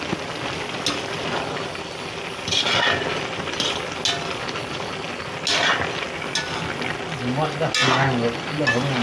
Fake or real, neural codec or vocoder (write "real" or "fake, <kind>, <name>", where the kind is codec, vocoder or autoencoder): real